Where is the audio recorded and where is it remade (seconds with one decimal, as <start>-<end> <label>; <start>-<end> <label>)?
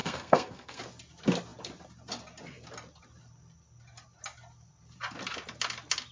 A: 0.0-0.8 remade; 0.8-6.1 recorded